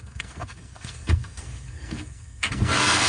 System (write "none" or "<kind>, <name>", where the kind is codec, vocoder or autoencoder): codec, SNAC